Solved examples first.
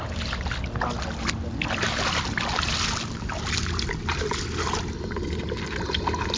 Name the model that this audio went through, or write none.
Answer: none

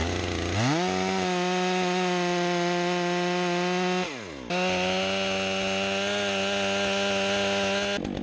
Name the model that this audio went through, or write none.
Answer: none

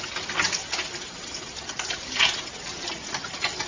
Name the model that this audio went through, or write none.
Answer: none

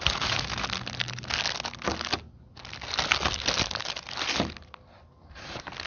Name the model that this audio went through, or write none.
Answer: none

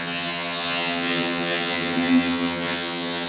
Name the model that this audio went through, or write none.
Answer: vocoder, HiFi-GAN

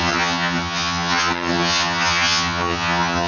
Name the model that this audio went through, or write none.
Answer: vocoder, HiFi-GAN